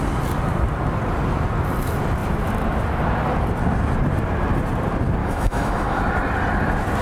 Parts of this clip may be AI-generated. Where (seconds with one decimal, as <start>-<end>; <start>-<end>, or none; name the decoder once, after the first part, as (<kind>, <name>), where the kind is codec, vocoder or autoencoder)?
5.2-6.0 (autoencoder, DAC-VAE)